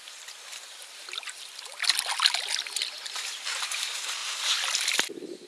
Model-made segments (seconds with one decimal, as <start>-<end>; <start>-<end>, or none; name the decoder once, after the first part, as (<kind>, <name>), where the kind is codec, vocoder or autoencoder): none

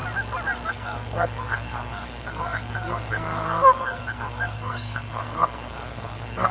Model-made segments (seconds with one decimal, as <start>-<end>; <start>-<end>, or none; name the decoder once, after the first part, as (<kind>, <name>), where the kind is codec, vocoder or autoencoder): 0.7-6.5 (codec, SNAC)